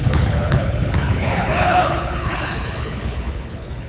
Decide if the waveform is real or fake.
fake